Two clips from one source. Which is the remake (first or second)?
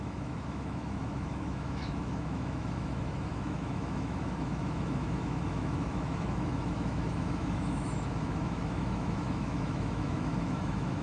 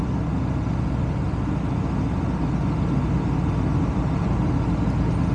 first